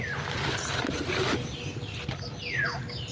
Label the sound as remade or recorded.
recorded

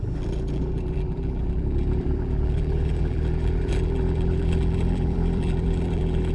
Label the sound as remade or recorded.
remade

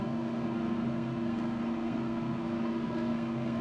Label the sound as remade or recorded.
remade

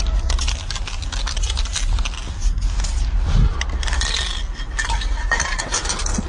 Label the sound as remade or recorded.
recorded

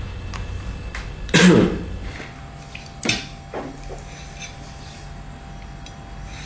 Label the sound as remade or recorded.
recorded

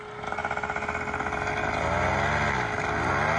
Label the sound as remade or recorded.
recorded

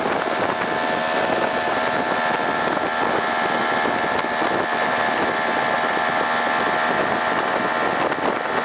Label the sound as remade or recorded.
recorded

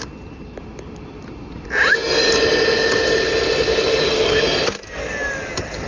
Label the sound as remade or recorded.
recorded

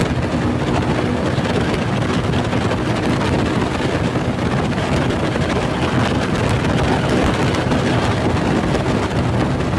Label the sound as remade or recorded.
recorded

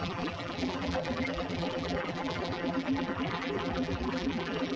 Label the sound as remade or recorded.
remade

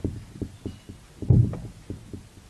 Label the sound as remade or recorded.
recorded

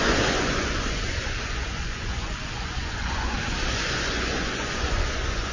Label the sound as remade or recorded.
remade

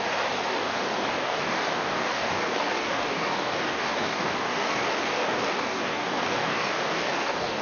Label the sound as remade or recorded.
remade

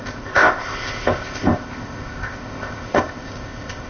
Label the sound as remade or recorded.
remade